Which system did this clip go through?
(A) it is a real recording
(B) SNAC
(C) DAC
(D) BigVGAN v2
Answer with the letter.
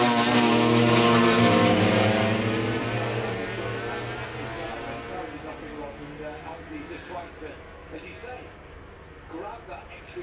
A